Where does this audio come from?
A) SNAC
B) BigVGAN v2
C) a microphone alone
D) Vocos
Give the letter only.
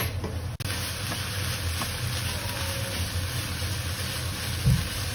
C